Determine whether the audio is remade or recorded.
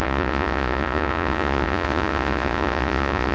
remade